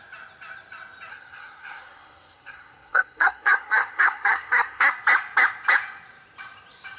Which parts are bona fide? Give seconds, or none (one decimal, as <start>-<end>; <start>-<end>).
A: 0.0-1.1; 4.9-7.0